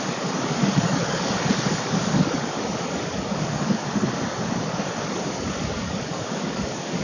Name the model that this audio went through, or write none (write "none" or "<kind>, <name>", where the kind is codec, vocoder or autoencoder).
codec, DAC